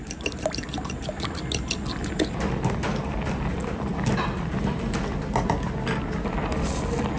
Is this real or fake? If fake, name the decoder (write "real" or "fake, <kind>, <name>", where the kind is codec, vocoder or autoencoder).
real